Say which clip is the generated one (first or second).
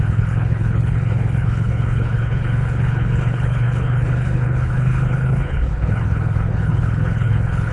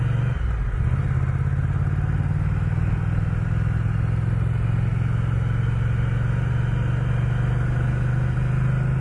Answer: first